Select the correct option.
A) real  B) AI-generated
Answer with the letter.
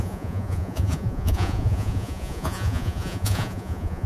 B